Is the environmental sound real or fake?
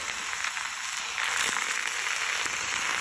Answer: real